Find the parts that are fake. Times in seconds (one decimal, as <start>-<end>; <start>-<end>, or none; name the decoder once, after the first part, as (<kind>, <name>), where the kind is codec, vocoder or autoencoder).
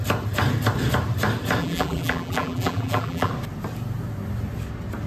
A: 1.6-3.3 (vocoder, BigVGAN v2)